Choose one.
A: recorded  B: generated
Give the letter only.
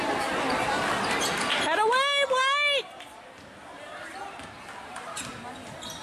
A